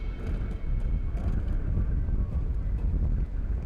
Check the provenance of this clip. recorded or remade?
recorded